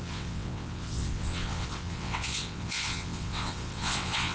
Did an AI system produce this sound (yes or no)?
yes